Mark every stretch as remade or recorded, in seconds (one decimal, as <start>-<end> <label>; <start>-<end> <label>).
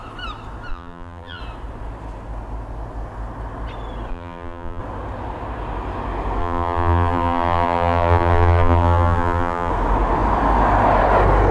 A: 0.0-0.7 recorded; 0.7-1.4 remade; 1.4-4.1 recorded; 4.1-4.8 remade; 4.8-6.4 recorded; 6.4-9.7 remade; 9.7-11.5 recorded